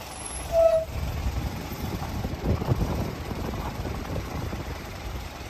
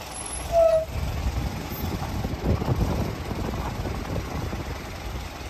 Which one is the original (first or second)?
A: second